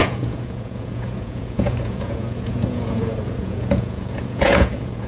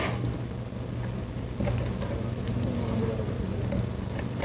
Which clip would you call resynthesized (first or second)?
first